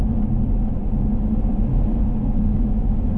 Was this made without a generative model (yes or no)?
yes